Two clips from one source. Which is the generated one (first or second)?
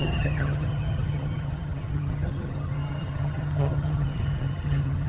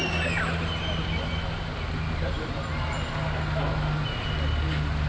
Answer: first